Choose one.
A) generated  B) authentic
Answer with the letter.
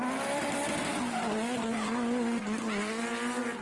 B